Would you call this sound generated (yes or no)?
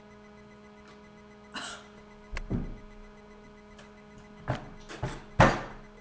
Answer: no